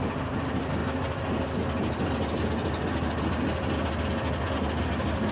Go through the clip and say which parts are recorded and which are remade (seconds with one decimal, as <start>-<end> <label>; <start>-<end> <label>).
0.0-5.3 recorded